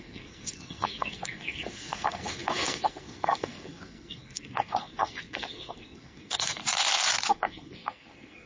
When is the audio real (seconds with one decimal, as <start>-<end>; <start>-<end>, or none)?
6.6-7.3